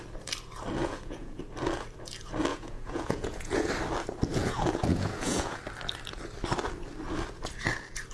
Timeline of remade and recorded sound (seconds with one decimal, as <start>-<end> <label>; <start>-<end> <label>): 0.0-0.8 recorded; 0.8-1.4 remade; 1.4-2.5 recorded; 2.5-3.7 remade; 3.7-4.3 recorded; 4.3-5.6 remade; 5.6-8.1 recorded